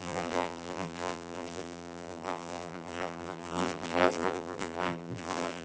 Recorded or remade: remade